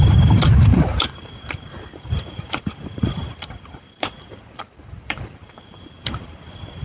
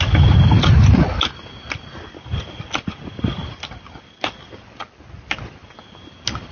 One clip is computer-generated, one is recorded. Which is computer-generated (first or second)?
first